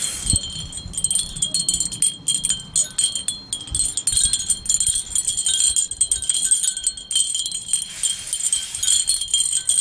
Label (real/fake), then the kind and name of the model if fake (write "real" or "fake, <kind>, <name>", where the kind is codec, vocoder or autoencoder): real